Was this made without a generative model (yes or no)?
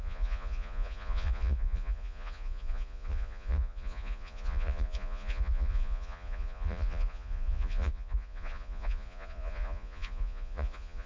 no